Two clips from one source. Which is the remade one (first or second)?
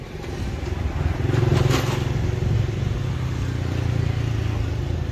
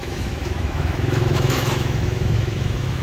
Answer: second